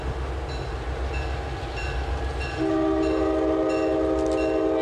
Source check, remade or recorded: recorded